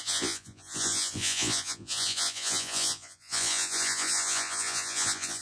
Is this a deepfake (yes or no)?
yes